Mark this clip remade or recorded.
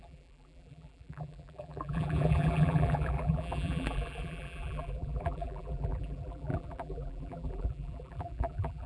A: remade